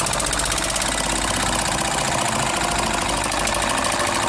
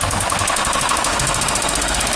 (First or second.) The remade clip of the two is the second